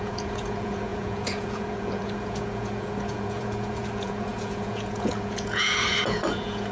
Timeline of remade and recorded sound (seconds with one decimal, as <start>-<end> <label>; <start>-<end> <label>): 0.0-6.7 remade